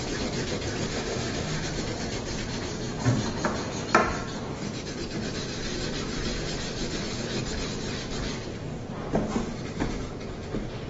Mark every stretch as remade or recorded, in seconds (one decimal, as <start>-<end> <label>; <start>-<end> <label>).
0.0-0.9 recorded; 0.9-1.7 remade; 1.7-10.9 recorded

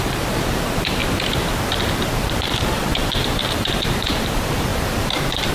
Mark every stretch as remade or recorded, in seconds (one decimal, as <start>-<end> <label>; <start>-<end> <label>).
0.0-1.0 remade; 1.0-1.9 recorded; 1.9-5.5 remade

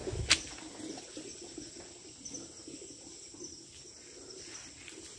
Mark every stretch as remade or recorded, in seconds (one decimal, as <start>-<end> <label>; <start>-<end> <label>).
0.0-5.2 recorded

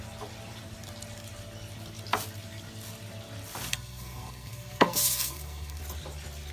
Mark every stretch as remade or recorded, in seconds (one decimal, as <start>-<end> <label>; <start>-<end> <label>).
0.0-3.7 recorded; 3.7-5.8 remade; 5.8-6.5 recorded

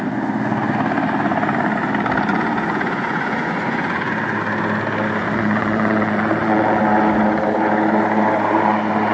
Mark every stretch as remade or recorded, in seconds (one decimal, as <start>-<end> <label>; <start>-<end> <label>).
0.0-2.3 recorded; 2.3-4.1 remade; 4.1-5.2 recorded; 5.2-6.8 remade; 6.8-9.1 recorded

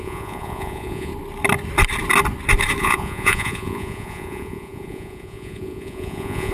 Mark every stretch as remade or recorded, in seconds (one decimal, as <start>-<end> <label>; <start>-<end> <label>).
0.0-1.1 remade; 1.1-2.8 recorded; 2.8-6.5 remade